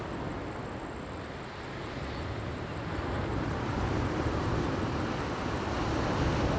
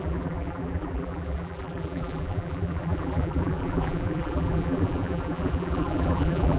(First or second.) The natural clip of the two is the first